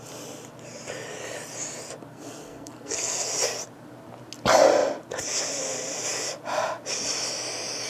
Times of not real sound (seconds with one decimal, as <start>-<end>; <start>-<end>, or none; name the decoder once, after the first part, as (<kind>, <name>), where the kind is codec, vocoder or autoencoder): 2.1-3.3 (codec, SNAC)